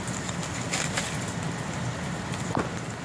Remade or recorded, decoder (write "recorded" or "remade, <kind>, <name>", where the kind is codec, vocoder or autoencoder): recorded